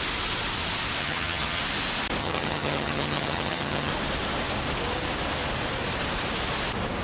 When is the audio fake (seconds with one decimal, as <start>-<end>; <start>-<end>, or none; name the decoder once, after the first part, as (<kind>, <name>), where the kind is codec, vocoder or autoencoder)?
1.0-1.6 (vocoder, HiFi-GAN); 2.2-3.9